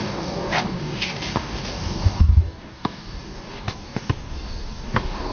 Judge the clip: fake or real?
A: fake